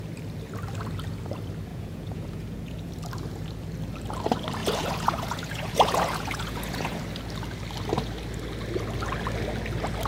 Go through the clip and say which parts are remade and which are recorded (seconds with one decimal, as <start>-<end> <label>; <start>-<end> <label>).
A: 0.0-1.7 recorded; 1.7-2.9 remade; 2.9-4.6 recorded; 4.6-7.0 remade; 7.0-10.1 recorded

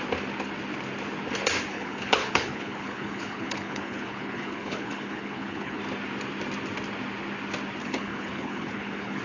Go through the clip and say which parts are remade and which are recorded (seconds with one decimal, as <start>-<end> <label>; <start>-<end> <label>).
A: 0.0-1.7 recorded; 1.7-5.8 remade; 5.8-7.8 recorded; 7.8-9.2 remade